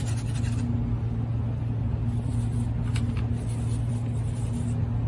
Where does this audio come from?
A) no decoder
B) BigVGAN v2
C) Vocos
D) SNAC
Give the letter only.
A